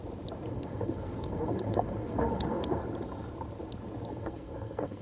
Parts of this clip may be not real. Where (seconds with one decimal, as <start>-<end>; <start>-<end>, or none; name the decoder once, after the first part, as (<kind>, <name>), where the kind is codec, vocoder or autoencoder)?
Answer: 0.5-2.8 (codec, SNAC); 4.1-5.0